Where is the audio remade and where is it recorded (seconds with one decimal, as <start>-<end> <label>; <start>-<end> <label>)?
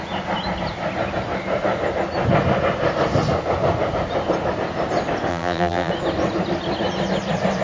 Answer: 0.0-5.3 recorded; 5.3-5.9 remade; 5.9-7.6 recorded